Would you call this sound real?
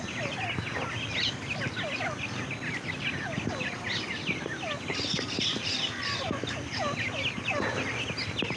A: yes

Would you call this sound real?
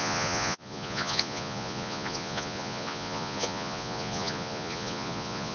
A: no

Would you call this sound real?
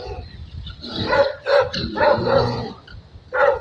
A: yes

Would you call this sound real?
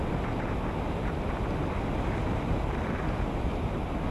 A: yes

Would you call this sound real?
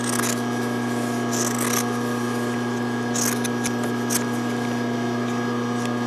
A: yes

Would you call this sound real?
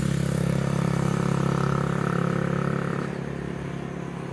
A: yes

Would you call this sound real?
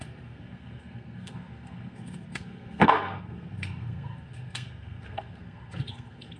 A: no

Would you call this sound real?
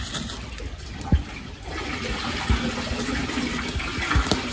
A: yes